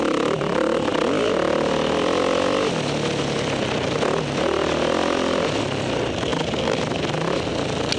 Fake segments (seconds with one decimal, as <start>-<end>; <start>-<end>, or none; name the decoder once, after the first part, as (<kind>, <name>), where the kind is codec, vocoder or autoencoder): none